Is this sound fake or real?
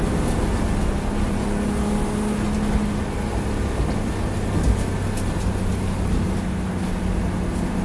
real